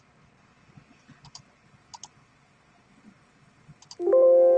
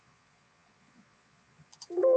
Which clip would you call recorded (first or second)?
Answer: first